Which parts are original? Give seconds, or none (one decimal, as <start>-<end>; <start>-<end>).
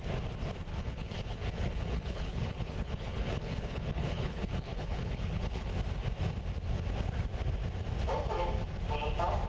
0.0-0.7; 5.7-9.5